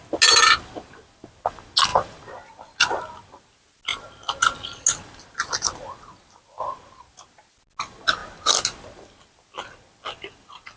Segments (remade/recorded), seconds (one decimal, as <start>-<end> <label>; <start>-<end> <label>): 0.0-10.8 recorded

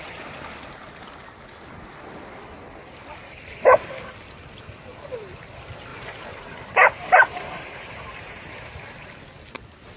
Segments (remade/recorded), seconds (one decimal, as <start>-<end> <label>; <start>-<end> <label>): 0.0-5.9 recorded; 5.9-9.2 remade; 9.2-10.0 recorded

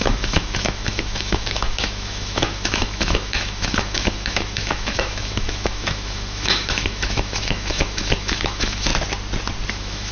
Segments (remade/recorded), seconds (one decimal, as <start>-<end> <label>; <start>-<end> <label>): 0.0-8.9 remade; 8.9-9.7 recorded; 9.7-10.1 remade

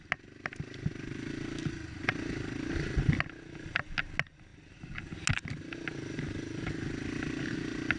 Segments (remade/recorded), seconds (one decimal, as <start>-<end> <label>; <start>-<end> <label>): 0.0-8.0 recorded

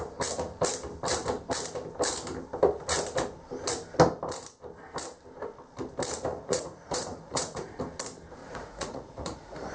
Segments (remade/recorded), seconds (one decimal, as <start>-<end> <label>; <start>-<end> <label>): 0.0-6.3 recorded; 6.3-7.8 remade; 7.8-8.4 recorded; 8.4-9.7 remade